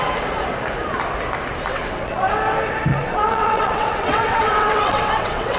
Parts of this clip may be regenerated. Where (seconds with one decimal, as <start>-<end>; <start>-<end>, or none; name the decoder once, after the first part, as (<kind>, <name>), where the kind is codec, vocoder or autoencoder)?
1.7-2.2 (vocoder, WaveNeXt); 2.9-5.6